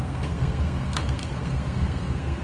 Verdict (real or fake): fake